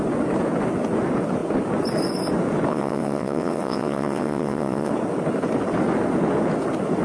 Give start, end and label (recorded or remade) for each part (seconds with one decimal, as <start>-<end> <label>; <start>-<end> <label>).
0.0-2.7 recorded; 2.7-4.9 remade; 4.9-7.0 recorded